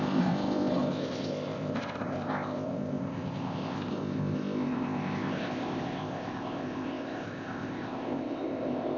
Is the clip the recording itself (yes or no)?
no